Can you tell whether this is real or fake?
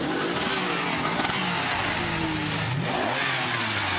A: real